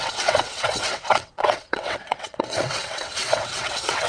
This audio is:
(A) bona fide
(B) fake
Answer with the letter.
B